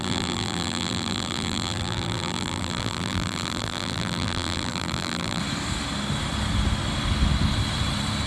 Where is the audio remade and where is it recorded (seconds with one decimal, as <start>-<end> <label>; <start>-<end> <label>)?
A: 0.0-5.4 remade; 5.4-8.3 recorded